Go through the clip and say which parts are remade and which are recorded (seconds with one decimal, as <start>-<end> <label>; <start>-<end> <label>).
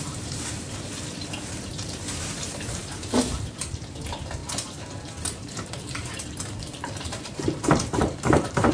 0.0-8.7 remade